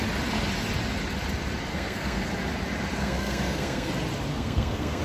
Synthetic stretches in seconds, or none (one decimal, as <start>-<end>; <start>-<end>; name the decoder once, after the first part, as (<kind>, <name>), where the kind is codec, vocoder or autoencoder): 1.7-2.3 (codec, SNAC); 3.0-3.9; 4.3-5.0